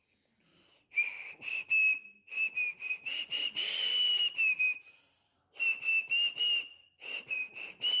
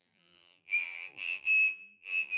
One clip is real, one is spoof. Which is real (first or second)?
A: first